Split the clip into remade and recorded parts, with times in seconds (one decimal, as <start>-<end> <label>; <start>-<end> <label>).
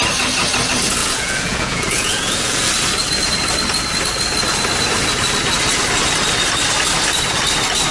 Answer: 0.0-1.0 recorded; 1.0-2.7 remade; 2.7-7.9 recorded